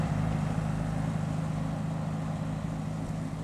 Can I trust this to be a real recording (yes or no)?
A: yes